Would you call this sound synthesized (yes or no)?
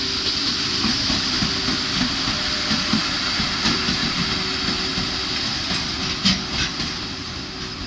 no